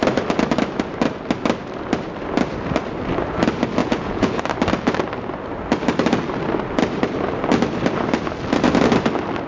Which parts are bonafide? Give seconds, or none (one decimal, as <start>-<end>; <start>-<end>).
0.0-3.8; 4.4-9.5